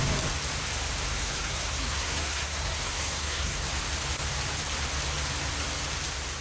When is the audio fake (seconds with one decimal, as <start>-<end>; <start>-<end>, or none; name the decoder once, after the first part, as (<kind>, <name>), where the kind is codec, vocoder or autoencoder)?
1.2-3.7 (codec, SNAC)